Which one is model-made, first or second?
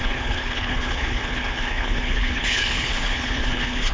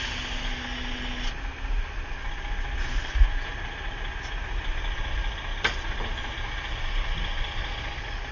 first